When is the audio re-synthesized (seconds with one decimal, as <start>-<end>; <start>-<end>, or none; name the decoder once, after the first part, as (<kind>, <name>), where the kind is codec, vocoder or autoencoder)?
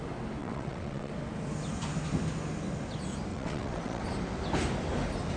0.4-1.1 (vocoder, WaveNeXt); 3.3-4.0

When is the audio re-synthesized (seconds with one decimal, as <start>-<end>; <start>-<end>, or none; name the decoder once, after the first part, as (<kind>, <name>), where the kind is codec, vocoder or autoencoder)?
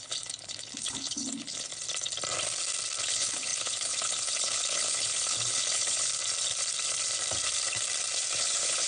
0.0-1.7 (codec, HILCodec); 3.0-6.1; 8.4-8.9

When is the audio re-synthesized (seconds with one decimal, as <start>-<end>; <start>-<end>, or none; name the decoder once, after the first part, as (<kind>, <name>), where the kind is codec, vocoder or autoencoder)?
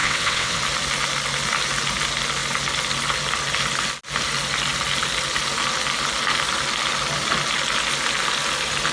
0.0-0.6 (vocoder, WaveNeXt)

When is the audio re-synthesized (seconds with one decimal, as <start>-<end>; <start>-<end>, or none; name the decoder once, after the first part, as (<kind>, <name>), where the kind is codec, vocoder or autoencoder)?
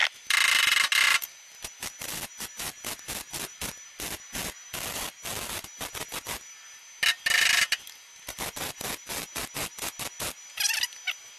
none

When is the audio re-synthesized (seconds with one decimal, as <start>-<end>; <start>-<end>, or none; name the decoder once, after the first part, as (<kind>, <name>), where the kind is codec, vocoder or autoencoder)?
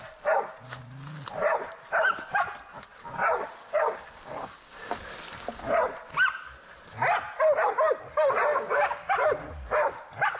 3.6-4.9 (codec, DAC); 8.5-9.1